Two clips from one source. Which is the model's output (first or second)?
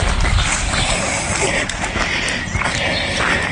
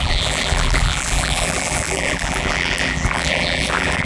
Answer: second